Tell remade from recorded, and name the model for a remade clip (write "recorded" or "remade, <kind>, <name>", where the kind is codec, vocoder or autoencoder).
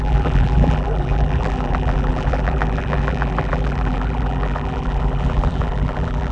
remade, vocoder, BigVGAN v2